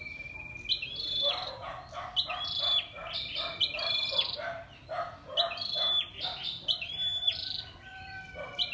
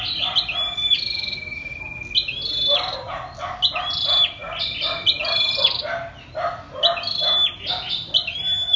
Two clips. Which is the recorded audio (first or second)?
second